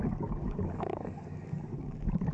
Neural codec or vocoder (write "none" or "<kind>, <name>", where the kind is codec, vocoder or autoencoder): codec, DAC